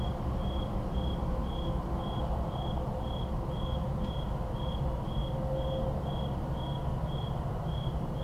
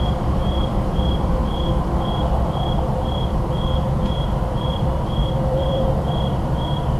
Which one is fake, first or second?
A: second